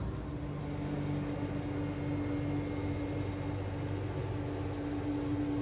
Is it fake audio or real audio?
real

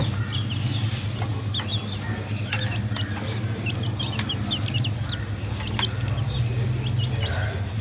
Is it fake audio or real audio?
real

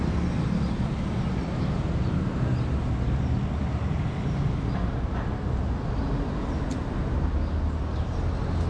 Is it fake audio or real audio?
real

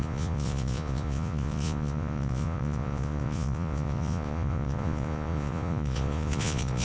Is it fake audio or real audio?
fake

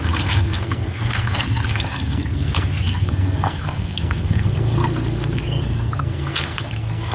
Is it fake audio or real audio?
fake